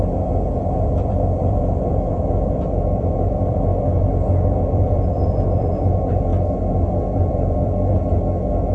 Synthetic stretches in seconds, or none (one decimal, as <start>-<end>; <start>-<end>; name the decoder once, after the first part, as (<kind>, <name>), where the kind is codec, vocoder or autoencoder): 0.0-6.3 (vocoder, BigVGAN v2); 7.0-8.7